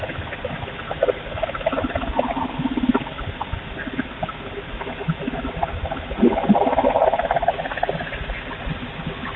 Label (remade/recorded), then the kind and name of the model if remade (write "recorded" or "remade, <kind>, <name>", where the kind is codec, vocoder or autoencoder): recorded